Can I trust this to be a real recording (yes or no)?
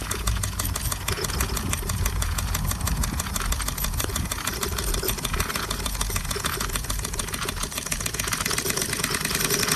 no